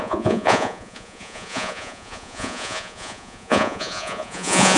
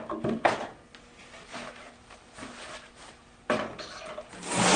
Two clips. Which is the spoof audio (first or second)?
first